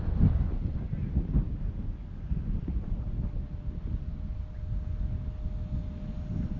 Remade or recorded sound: recorded